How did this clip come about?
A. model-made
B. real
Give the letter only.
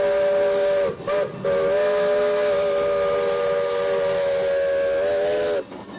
B